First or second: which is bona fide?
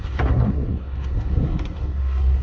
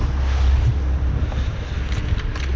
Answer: second